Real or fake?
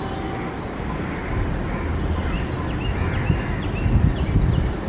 real